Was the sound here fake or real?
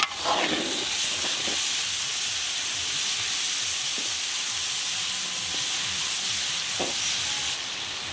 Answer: real